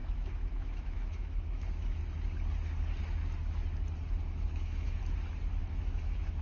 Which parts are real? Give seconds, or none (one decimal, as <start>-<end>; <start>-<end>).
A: 2.0-4.2; 5.0-5.6